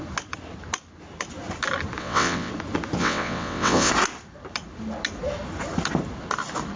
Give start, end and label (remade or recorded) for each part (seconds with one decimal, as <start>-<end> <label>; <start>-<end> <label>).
0.0-2.0 recorded; 2.0-2.5 remade; 2.5-3.0 recorded; 3.0-3.9 remade; 3.9-6.8 recorded